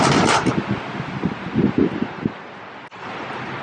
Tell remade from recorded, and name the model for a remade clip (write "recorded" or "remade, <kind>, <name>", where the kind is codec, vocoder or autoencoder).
recorded